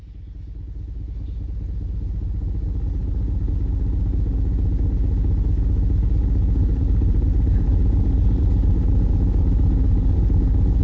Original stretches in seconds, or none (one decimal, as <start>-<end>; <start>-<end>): 0.0-3.0; 3.5-6.6; 10.4-10.8